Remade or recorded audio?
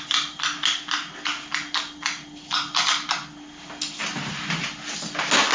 recorded